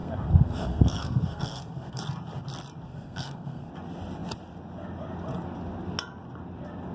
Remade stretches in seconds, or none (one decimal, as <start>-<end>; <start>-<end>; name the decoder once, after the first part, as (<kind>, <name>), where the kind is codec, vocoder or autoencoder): 0.0-2.0 (codec, SNAC); 2.9-3.7